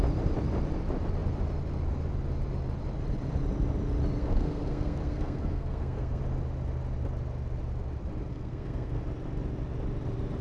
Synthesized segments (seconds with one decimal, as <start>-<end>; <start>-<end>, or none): 4.2-6.2; 8.3-9.0